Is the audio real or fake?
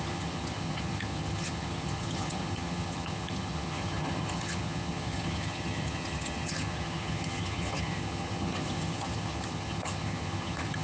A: fake